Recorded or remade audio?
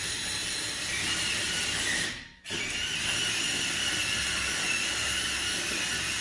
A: recorded